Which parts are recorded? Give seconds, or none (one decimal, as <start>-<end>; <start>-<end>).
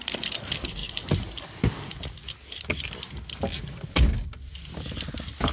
0.0-5.5